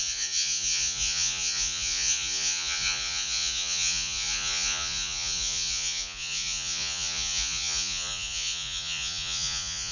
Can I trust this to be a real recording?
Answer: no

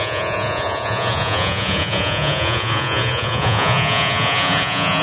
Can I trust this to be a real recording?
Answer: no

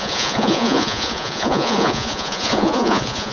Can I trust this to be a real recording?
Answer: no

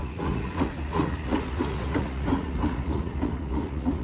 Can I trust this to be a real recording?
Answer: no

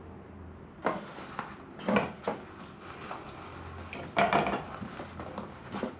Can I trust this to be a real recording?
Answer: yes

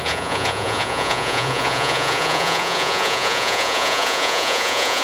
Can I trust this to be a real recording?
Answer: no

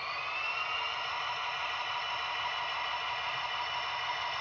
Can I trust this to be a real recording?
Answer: yes